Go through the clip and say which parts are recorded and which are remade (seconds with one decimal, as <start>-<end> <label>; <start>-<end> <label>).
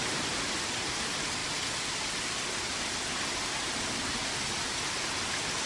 0.0-5.7 recorded